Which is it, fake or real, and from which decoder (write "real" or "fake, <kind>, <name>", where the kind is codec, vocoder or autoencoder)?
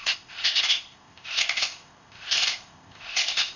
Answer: fake, codec, ZipCodec